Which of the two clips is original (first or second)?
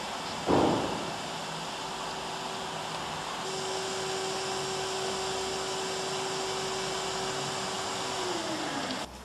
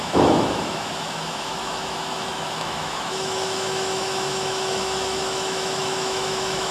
first